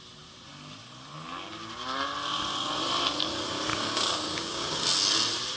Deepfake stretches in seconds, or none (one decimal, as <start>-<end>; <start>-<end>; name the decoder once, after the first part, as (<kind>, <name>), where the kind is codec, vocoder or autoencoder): 3.7-4.8 (codec, DAC)